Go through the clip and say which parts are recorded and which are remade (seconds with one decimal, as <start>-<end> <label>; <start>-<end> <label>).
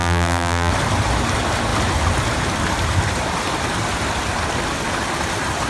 0.0-0.7 remade; 0.7-5.7 recorded